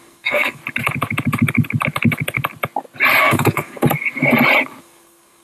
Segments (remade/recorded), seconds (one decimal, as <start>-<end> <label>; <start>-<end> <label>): 0.0-0.6 remade; 0.6-3.2 recorded; 3.2-3.8 remade; 3.8-4.8 recorded; 4.8-5.4 remade

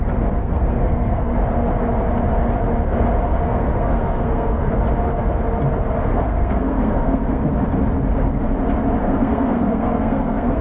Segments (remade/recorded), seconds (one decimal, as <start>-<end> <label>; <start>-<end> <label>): 0.0-0.4 recorded; 0.4-1.2 remade; 1.2-3.3 recorded; 3.3-4.7 remade; 4.7-6.1 recorded; 6.1-7.4 remade; 7.4-9.0 recorded; 9.0-10.6 remade

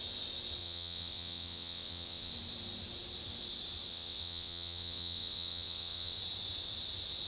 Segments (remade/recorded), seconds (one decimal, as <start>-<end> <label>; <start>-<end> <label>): 0.0-0.6 recorded; 0.6-2.3 remade; 2.3-3.9 recorded; 3.9-6.2 remade; 6.2-7.3 recorded

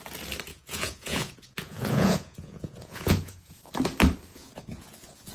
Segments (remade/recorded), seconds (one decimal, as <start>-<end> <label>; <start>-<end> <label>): 0.0-0.5 recorded; 0.5-3.7 remade; 3.7-4.3 recorded; 4.3-5.3 remade

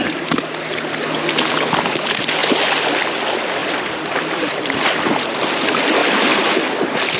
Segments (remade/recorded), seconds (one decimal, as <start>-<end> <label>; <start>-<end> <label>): 0.0-2.4 recorded; 2.4-3.0 remade; 3.0-3.6 recorded; 3.6-5.3 remade; 5.3-6.0 recorded; 6.0-6.8 remade; 6.8-7.2 recorded